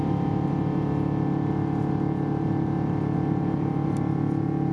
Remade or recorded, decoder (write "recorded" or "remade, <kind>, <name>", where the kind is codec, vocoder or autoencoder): recorded